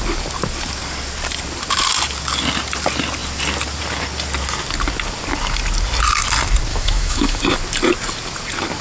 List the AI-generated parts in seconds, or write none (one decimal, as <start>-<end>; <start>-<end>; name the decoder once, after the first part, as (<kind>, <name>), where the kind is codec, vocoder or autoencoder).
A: 6.7-7.4 (autoencoder, DAC-VAE)